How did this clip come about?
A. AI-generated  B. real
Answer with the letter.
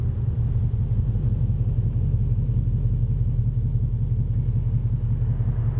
B